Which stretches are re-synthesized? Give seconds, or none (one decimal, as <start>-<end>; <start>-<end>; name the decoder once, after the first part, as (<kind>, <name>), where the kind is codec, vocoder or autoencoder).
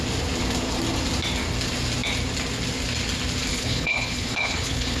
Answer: 3.5-5.0 (codec, HILCodec)